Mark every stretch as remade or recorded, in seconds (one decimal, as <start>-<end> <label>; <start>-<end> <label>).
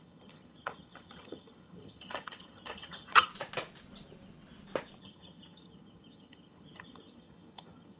0.0-3.3 remade; 3.3-5.0 recorded; 5.0-8.0 remade